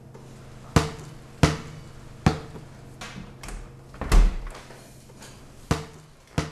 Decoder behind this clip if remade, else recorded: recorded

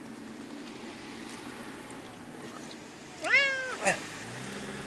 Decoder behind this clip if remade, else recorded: recorded